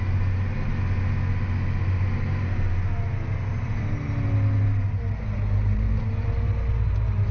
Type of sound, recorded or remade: recorded